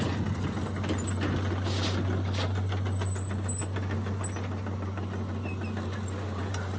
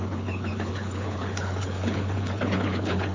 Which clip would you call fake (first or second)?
second